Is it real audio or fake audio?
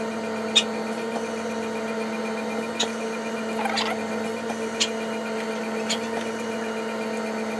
real